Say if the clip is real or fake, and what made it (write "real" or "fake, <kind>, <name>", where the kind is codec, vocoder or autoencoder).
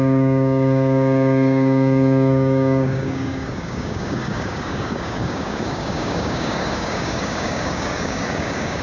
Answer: fake, codec, DAC